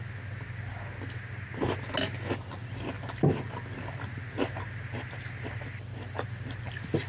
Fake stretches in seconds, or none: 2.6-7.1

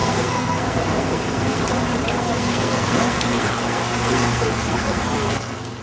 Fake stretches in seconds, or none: 0.0-1.6; 2.1-5.8

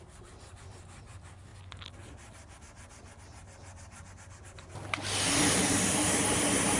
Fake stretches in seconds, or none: none

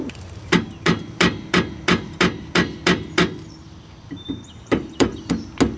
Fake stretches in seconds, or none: 0.0-5.1

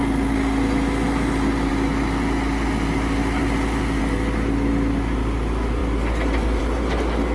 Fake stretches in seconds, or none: none

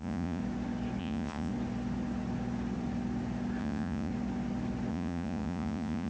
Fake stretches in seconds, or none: 0.0-0.4; 1.0-1.5; 3.6-4.1; 4.9-6.1

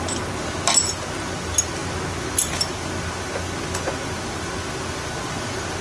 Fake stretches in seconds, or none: none

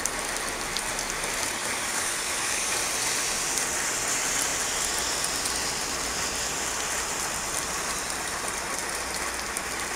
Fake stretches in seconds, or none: 1.6-2.7